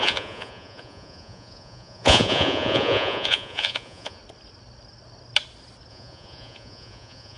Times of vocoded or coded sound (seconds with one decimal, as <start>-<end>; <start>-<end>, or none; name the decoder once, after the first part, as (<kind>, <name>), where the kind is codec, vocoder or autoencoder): 0.0-4.2 (vocoder, Vocos); 5.9-7.4